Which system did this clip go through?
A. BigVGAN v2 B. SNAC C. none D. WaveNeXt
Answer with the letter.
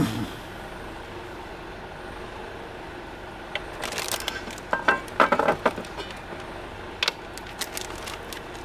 C